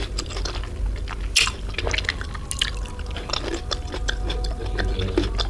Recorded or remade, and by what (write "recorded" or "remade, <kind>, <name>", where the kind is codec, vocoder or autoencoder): recorded